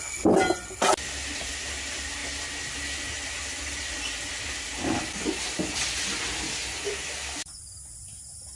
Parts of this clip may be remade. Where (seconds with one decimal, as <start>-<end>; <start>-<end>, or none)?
none